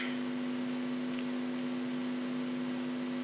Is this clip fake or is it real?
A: real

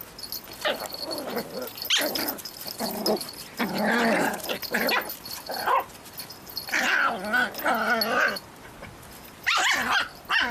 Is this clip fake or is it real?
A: real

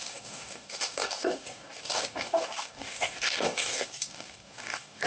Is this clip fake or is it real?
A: fake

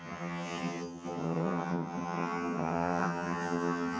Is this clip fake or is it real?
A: fake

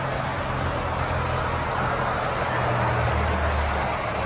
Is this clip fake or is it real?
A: real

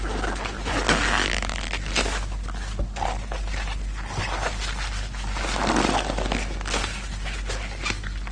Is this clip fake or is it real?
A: real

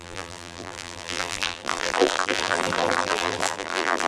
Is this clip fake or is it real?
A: fake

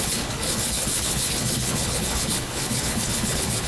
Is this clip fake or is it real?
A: fake